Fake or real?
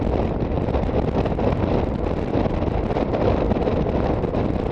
real